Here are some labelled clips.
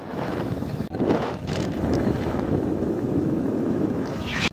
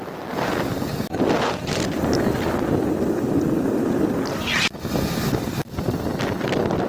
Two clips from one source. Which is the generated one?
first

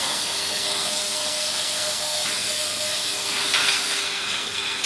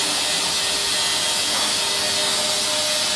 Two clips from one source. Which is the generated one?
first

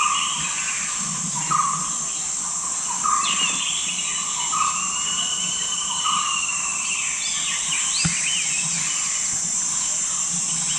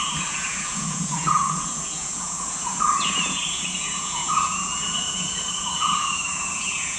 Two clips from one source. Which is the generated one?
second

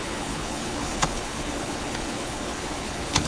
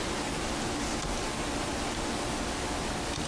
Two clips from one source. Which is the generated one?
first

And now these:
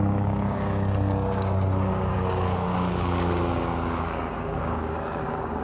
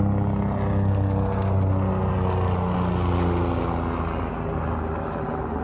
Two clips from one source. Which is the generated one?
first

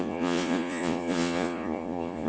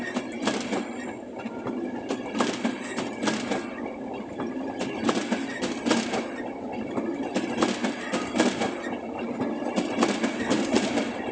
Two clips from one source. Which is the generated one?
first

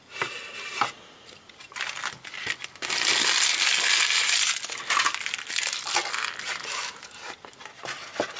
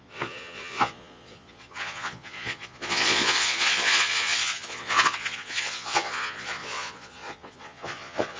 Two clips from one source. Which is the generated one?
second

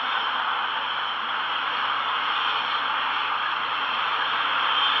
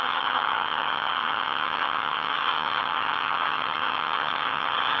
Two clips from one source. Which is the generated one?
second